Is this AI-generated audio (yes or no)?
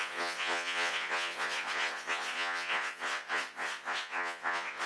yes